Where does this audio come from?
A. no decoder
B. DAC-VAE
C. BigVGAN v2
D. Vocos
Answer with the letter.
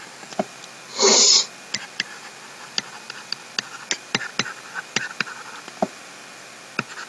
A